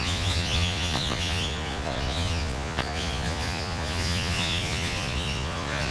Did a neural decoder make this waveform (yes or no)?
yes